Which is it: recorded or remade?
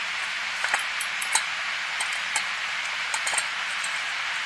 remade